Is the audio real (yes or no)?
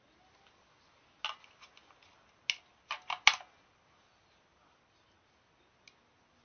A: yes